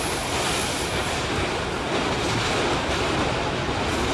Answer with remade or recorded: recorded